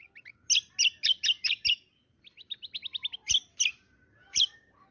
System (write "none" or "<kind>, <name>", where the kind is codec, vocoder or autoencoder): none